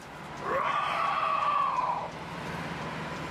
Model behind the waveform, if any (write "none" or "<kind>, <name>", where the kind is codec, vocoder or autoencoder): vocoder, BigVGAN v2